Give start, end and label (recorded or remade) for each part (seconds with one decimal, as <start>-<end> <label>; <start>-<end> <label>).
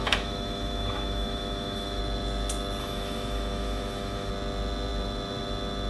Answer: 0.0-2.0 remade; 2.0-2.8 recorded; 2.8-4.3 remade; 4.3-5.9 recorded